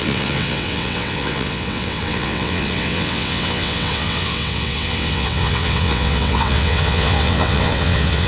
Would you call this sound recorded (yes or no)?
no